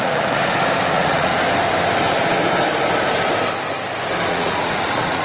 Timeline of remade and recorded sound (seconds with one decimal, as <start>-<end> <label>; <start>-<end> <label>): 0.0-0.4 remade; 0.4-0.9 recorded; 0.9-1.3 remade; 1.3-4.3 recorded; 4.3-5.2 remade